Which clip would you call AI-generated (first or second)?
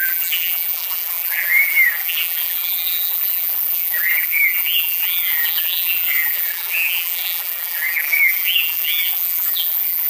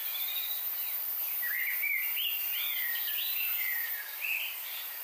first